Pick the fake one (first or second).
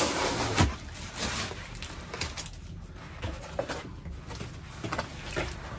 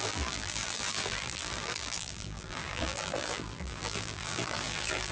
second